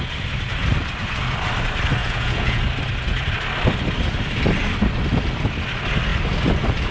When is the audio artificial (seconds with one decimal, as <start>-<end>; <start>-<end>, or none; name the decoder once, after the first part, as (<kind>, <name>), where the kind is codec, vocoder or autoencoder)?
2.0-2.6 (vocoder, Vocos)